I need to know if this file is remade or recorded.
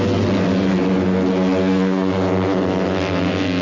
recorded